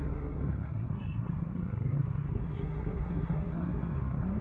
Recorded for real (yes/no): no